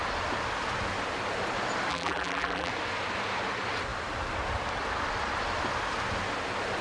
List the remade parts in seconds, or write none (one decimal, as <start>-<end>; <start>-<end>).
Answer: 1.9-2.7